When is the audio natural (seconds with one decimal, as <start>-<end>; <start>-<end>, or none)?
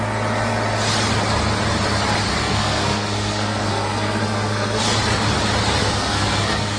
0.0-2.3; 4.8-5.8